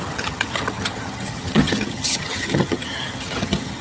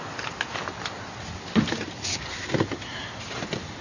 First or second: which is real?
second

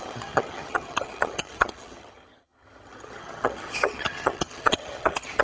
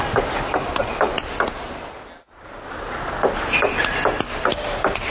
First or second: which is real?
second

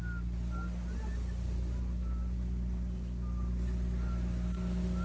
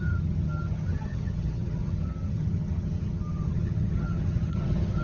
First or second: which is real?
first